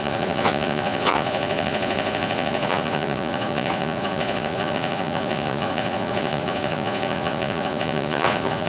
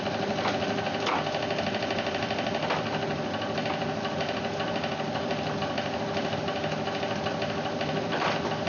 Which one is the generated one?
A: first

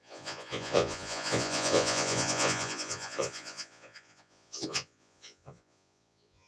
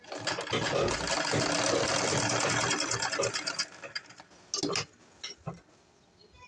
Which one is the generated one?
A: first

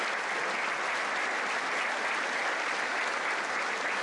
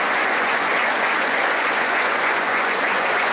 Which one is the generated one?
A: second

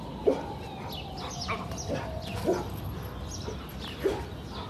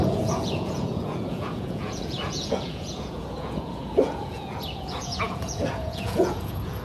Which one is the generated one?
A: second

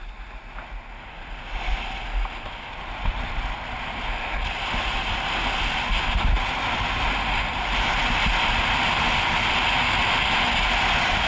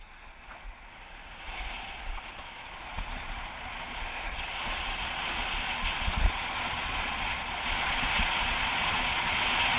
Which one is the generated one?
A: second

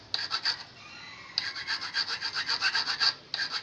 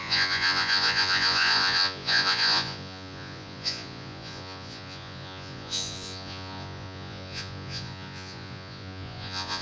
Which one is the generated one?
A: second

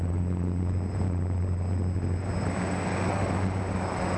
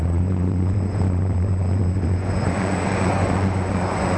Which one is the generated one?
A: second